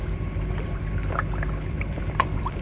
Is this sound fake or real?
fake